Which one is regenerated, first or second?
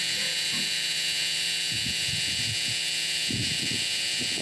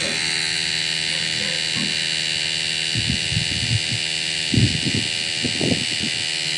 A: first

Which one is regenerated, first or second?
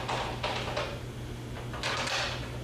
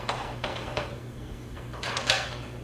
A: second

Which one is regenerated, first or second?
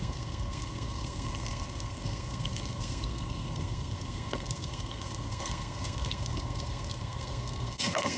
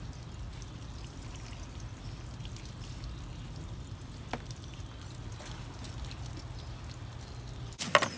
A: first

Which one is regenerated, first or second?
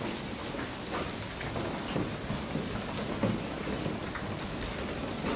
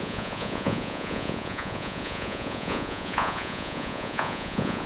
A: second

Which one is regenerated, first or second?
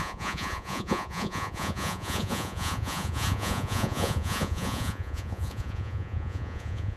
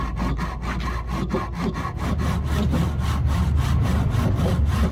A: first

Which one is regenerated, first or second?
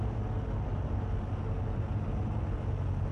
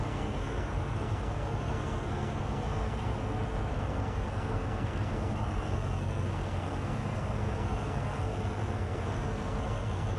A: second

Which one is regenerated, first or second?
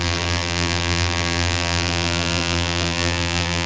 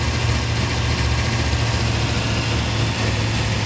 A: first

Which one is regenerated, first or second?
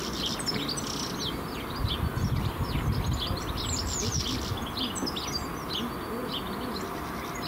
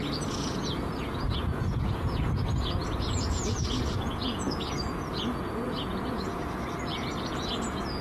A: second